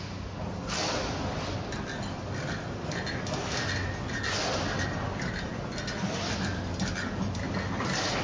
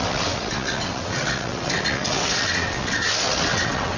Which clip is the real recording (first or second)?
first